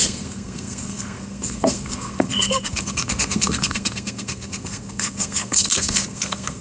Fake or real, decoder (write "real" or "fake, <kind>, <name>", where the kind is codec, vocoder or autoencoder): fake, codec, SNAC